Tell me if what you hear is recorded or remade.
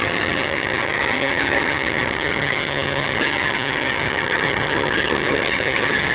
remade